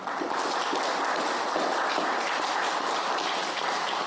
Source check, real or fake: real